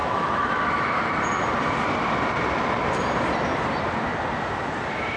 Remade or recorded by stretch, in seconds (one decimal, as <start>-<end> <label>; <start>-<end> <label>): 0.0-1.0 remade; 1.0-5.2 recorded